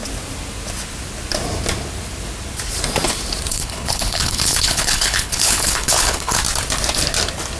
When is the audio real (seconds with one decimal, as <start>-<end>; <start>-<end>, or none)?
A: 0.0-3.5; 6.4-7.6